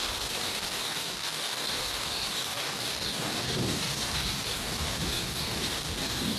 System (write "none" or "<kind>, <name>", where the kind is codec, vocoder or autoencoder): codec, DAC